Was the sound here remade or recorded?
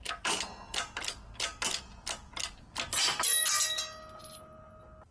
recorded